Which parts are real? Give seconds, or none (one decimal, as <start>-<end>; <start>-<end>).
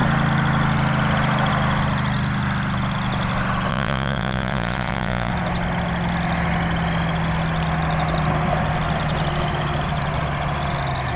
0.0-3.7; 5.3-11.2